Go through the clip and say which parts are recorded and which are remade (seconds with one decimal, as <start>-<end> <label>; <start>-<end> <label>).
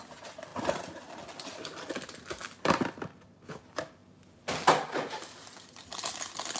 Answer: 0.0-6.6 recorded